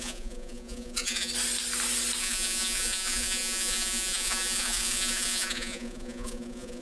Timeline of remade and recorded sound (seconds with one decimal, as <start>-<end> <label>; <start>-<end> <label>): 0.0-1.3 remade; 1.3-2.2 recorded; 2.2-6.8 remade